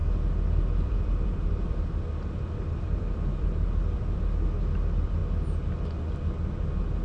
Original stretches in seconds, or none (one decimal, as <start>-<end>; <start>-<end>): 4.2-7.0